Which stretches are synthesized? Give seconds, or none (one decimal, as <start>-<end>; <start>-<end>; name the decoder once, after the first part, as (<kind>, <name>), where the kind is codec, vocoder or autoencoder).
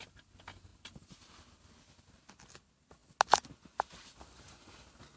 none